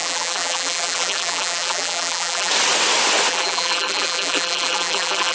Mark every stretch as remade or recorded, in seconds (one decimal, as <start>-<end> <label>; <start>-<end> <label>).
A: 0.0-2.5 remade; 2.5-3.3 recorded; 3.3-5.3 remade